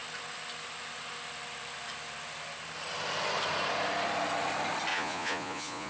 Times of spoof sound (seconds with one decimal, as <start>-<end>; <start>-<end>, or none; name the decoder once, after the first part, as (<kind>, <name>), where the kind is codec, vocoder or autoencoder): 4.9-5.9 (vocoder, Vocos)